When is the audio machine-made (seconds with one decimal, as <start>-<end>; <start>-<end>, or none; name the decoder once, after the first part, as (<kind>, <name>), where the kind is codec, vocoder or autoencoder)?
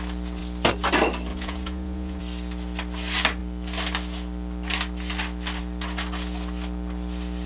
1.3-2.2 (vocoder, Vocos)